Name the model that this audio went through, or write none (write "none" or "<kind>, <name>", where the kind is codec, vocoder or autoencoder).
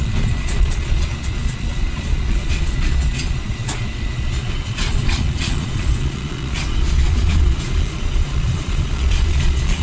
vocoder, Vocos